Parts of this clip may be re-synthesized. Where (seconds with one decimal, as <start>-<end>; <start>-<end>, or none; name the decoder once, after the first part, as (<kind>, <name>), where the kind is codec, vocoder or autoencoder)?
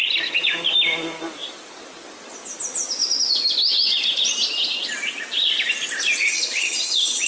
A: 6.2-7.3 (vocoder, HiFi-GAN)